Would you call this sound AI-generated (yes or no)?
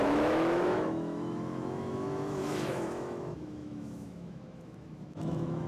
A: yes